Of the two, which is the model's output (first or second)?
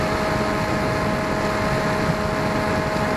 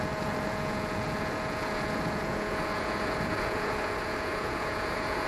second